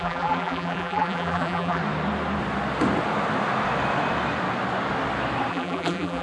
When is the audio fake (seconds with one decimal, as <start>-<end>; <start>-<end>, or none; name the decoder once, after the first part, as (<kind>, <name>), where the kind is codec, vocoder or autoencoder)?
0.0-1.8 (vocoder, BigVGAN v2); 5.5-6.2